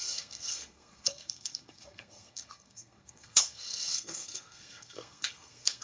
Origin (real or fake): fake